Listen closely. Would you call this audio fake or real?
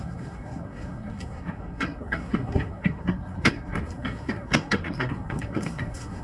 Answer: fake